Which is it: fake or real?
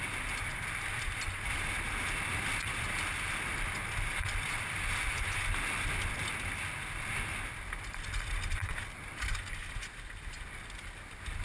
real